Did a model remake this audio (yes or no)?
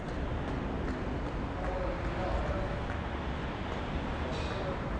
no